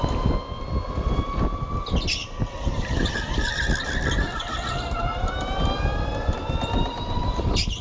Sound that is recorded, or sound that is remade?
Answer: recorded